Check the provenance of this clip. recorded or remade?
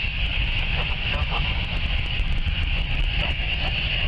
remade